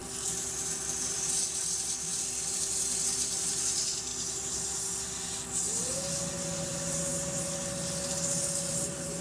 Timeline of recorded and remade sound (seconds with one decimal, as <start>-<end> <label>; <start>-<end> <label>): 0.0-3.1 recorded; 3.1-4.1 remade; 4.1-6.6 recorded; 6.6-7.1 remade; 7.1-8.7 recorded; 8.7-9.2 remade